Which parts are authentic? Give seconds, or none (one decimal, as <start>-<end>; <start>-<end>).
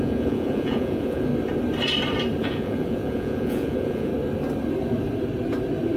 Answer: 1.3-2.4; 4.1-6.0